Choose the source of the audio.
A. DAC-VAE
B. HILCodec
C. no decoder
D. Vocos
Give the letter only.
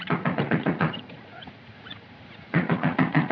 D